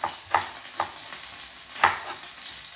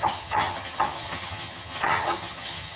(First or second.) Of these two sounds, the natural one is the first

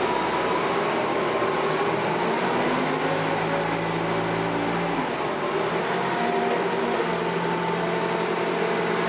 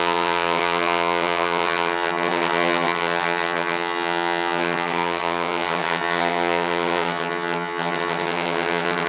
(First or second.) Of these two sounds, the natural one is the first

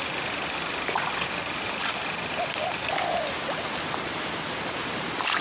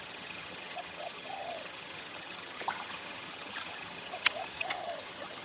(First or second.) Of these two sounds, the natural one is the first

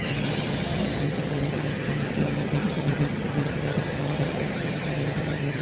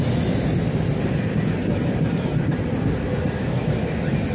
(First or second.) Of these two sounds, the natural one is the second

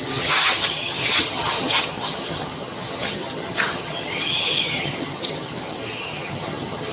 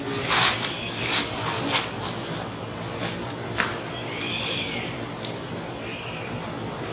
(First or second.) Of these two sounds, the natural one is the second